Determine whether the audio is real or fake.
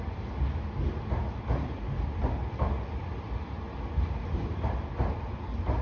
real